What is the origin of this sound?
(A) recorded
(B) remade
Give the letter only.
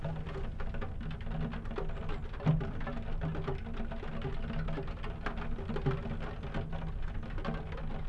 A